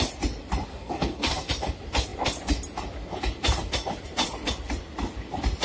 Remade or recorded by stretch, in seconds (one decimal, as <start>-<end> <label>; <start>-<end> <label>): 0.0-0.7 recorded; 0.7-1.5 remade; 1.5-5.6 recorded